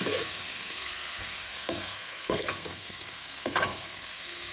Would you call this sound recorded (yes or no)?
no